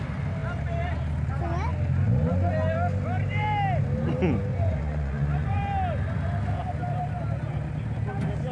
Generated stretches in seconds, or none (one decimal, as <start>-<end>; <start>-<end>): 4.5-5.6